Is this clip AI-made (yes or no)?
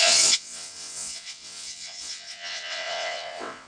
yes